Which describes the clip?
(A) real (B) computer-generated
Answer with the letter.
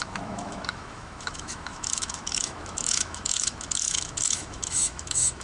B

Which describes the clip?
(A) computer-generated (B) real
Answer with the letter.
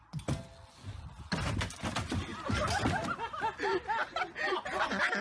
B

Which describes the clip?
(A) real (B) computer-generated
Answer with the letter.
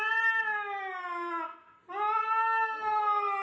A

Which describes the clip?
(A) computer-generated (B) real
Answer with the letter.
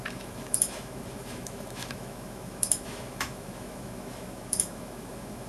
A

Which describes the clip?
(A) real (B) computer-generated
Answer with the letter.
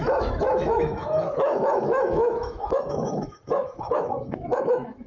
B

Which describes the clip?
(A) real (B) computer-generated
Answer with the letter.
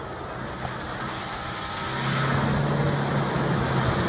A